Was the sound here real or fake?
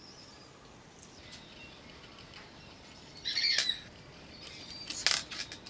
real